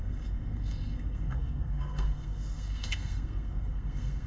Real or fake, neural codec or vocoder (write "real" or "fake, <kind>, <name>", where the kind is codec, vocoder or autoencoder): fake, codec, SNAC